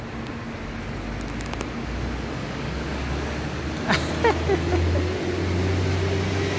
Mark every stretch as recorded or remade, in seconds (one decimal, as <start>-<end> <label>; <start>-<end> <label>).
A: 0.0-2.4 recorded; 2.4-3.1 remade; 3.1-6.6 recorded

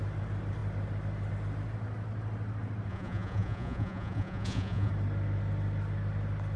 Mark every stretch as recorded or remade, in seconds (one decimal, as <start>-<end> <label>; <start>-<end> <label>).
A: 0.0-2.9 recorded; 2.9-4.9 remade; 4.9-6.6 recorded

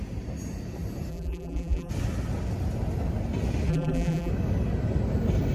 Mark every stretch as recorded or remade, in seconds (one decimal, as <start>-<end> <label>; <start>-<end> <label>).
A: 0.0-1.1 recorded; 1.1-1.9 remade; 1.9-3.7 recorded; 3.7-4.3 remade; 4.3-5.5 recorded

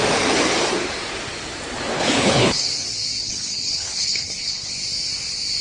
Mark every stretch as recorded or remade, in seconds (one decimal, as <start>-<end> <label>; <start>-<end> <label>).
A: 0.0-1.9 recorded; 1.9-2.6 remade; 2.6-3.2 recorded; 3.2-4.7 remade; 4.7-5.6 recorded

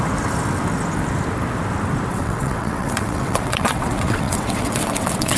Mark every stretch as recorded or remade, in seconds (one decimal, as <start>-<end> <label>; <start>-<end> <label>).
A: 0.0-2.1 recorded; 2.1-5.4 remade

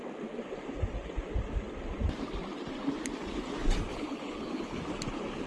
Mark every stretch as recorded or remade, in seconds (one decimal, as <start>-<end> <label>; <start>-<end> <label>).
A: 0.0-3.9 recorded; 3.9-4.8 remade; 4.8-5.5 recorded

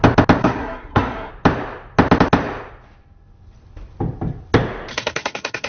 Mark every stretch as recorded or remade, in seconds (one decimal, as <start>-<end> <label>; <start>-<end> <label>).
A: 0.0-0.4 recorded; 0.4-1.3 remade; 1.3-4.9 recorded; 4.9-5.7 remade